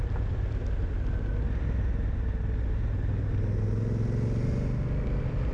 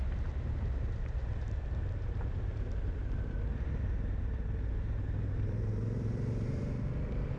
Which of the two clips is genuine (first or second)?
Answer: first